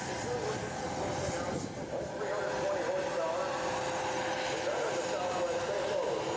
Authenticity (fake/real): real